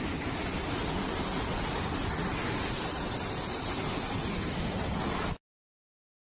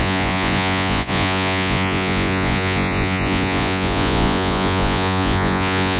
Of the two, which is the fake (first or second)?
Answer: second